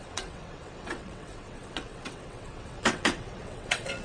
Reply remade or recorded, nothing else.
remade